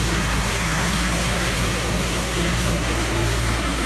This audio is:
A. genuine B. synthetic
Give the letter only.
B